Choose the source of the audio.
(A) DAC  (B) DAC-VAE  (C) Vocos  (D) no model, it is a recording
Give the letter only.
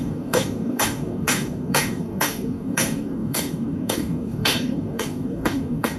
A